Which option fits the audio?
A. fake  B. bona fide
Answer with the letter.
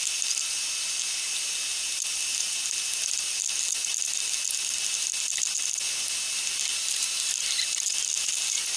B